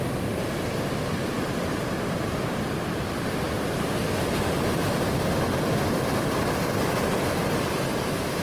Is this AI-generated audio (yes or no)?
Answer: no